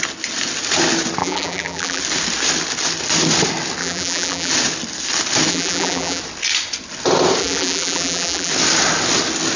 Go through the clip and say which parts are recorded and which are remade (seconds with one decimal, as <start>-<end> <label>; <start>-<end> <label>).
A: 0.0-1.2 recorded; 1.2-2.0 remade; 2.0-3.8 recorded; 3.8-4.5 remade; 4.5-5.5 recorded; 5.5-6.2 remade; 6.2-7.4 recorded; 7.4-8.5 remade; 8.5-9.6 recorded